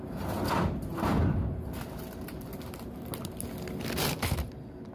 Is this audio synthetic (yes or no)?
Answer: no